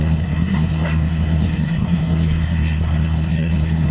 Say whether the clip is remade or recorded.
remade